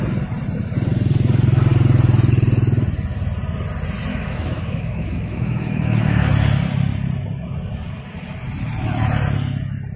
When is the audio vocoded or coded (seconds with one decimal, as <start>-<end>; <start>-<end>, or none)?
4.1-6.3